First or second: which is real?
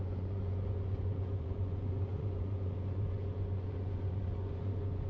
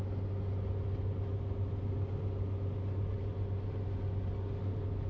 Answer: second